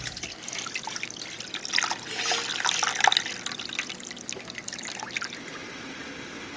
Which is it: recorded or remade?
recorded